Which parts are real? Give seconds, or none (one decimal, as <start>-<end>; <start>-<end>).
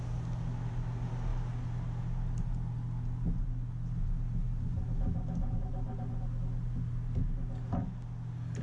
0.0-8.6